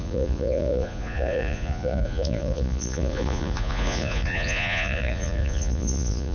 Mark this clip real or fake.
fake